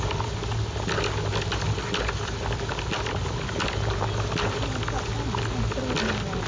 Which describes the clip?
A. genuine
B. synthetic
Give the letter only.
A